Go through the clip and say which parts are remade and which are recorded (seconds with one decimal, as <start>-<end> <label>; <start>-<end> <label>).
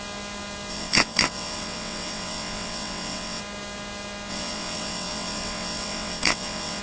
0.0-0.7 recorded; 0.7-3.4 remade; 3.4-4.3 recorded; 4.3-6.8 remade